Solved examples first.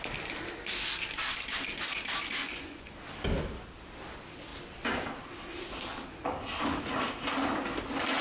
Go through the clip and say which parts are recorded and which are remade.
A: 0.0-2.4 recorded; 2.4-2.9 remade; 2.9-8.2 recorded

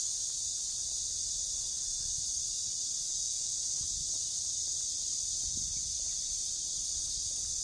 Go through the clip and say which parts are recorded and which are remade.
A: 0.0-3.1 recorded; 3.1-3.7 remade; 3.7-7.6 recorded

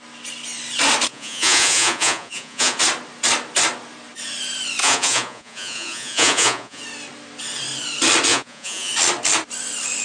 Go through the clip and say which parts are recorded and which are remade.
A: 0.0-1.1 recorded; 1.1-2.8 remade; 2.8-4.8 recorded; 4.8-6.8 remade; 6.8-8.3 recorded; 8.3-8.9 remade; 8.9-10.0 recorded

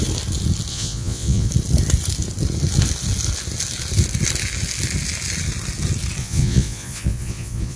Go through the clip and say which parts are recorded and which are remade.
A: 0.0-0.7 recorded; 0.7-1.5 remade; 1.5-6.2 recorded; 6.2-7.8 remade

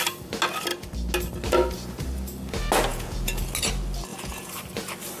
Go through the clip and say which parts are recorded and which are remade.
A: 0.0-2.9 recorded; 2.9-3.4 remade; 3.4-4.1 recorded; 4.1-4.6 remade; 4.6-5.2 recorded

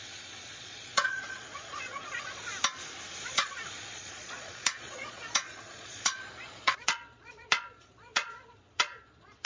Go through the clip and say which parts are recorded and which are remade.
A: 0.0-2.5 remade; 2.5-3.2 recorded; 3.2-9.5 remade